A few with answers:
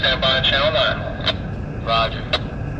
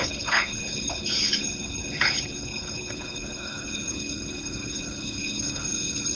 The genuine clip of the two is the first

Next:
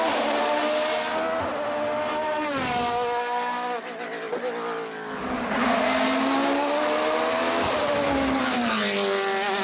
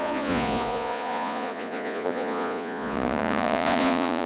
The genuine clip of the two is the first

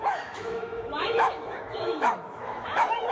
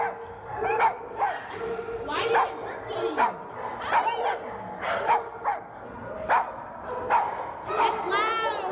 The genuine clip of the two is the second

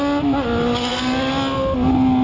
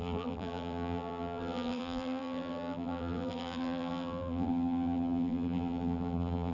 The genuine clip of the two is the first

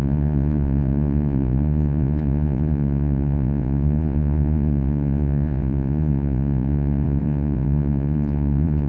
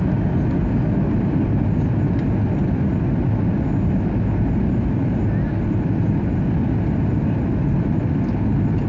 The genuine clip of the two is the second